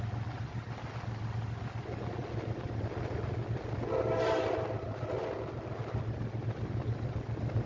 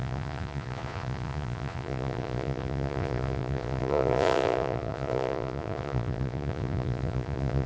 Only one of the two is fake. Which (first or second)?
second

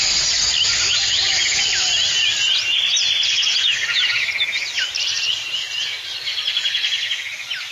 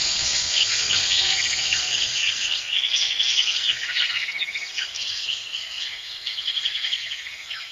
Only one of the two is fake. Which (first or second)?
second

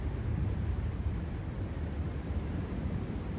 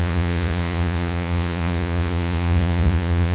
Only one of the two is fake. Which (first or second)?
second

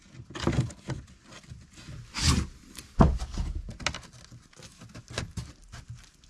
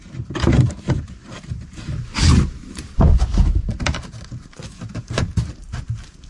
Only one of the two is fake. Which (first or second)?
second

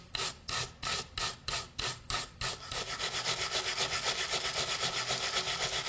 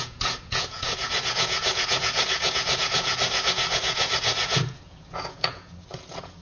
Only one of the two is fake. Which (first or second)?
second